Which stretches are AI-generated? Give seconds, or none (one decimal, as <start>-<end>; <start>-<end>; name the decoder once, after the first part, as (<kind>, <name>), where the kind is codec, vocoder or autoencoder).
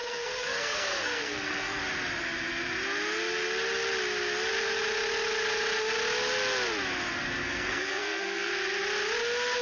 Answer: 0.0-1.8 (codec, SNAC); 7.4-8.5